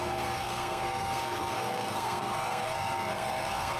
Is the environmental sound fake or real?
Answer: fake